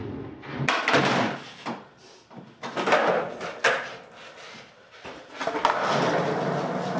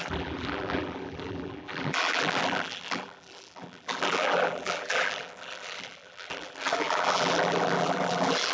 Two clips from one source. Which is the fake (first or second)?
second